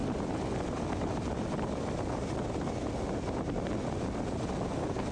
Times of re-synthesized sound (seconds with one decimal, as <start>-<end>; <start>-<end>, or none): 0.0-1.9